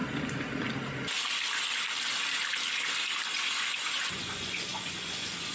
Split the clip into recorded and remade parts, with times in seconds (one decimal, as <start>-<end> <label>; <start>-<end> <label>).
0.0-3.3 recorded; 3.3-5.5 remade